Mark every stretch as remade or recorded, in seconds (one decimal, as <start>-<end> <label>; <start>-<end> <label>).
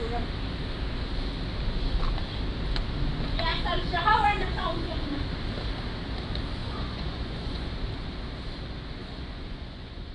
0.0-3.5 recorded; 3.5-5.2 remade; 5.2-6.6 recorded; 6.6-7.7 remade; 7.7-9.0 recorded; 9.0-10.1 remade